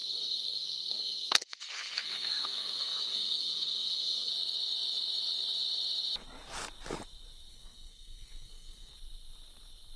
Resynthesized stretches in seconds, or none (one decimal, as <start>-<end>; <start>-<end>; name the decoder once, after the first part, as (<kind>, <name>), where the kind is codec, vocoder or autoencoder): 0.0-4.3 (codec, SNAC); 7.5-8.9